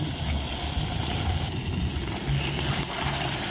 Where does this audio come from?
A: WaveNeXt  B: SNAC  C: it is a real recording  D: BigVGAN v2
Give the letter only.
C